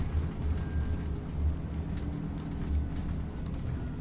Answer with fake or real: real